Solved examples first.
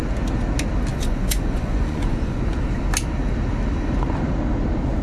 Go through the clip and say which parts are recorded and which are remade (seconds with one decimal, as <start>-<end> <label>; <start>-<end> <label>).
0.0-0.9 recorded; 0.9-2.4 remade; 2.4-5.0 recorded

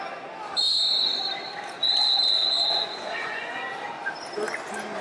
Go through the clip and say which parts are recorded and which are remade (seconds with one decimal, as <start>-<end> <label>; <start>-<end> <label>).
0.0-0.6 recorded; 0.6-1.2 remade; 1.2-2.4 recorded; 2.4-3.6 remade; 3.6-5.0 recorded

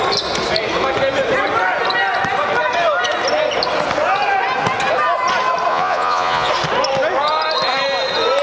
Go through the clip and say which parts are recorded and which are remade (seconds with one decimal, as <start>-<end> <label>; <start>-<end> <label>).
0.0-5.7 recorded; 5.7-6.5 remade; 6.5-8.4 recorded

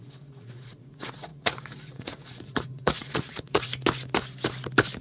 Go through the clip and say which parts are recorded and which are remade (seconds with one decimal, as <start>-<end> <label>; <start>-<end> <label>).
0.0-3.7 remade; 3.7-5.0 recorded